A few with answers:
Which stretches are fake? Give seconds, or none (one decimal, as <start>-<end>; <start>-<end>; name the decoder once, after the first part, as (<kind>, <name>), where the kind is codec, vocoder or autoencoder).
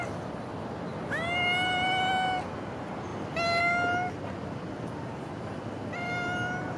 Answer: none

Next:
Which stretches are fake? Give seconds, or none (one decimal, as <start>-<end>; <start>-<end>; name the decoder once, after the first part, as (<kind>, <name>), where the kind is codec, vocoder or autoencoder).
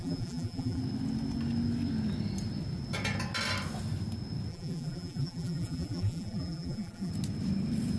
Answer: 0.0-0.8 (vocoder, BigVGAN v2); 4.5-7.1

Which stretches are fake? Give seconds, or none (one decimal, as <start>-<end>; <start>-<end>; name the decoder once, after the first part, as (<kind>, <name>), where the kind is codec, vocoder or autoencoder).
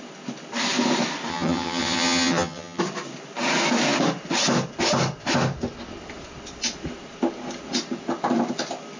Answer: 1.3-2.8 (vocoder, HiFi-GAN)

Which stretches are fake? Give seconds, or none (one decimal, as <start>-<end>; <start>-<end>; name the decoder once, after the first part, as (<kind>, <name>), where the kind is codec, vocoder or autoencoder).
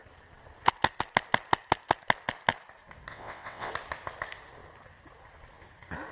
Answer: 3.1-3.7 (vocoder, WaveNeXt)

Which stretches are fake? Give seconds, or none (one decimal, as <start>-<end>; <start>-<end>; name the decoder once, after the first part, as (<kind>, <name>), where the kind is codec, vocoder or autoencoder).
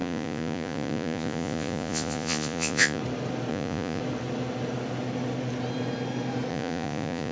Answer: 0.0-3.0 (vocoder, Vocos); 3.5-4.0; 6.5-7.3